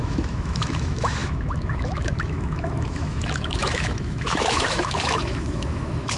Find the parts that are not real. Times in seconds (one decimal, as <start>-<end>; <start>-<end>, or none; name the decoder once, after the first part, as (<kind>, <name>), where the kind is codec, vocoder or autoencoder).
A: 0.0-6.2 (autoencoder, DAC-VAE)